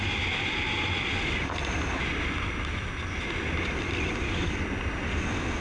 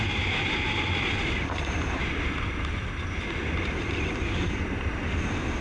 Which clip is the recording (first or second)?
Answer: first